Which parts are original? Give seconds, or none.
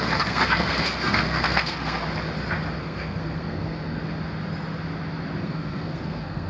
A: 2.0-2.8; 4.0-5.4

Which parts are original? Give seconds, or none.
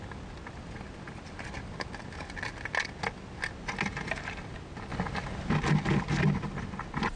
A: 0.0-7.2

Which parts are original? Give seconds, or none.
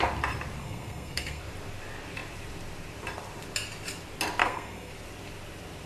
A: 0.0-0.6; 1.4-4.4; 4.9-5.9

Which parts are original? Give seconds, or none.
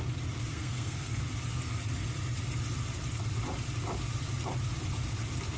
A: 0.0-0.5; 1.2-5.6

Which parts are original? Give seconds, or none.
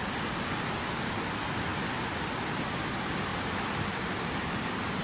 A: 0.0-5.0